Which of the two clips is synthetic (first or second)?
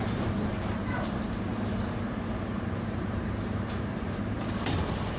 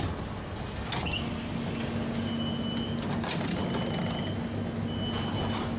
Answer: first